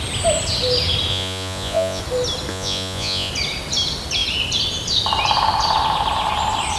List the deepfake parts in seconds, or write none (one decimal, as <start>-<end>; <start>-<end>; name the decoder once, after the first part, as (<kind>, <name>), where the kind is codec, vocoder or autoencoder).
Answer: 1.1-2.0 (vocoder, Vocos); 2.5-3.3